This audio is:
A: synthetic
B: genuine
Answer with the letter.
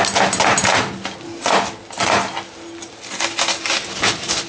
B